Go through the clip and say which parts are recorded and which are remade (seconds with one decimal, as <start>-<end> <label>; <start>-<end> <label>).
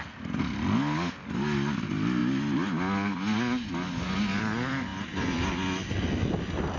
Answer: 0.0-6.8 recorded